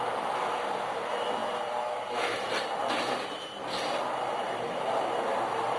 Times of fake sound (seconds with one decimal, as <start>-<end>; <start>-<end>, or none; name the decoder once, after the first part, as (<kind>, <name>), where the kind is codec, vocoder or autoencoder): 0.0-5.8 (vocoder, BigVGAN v2)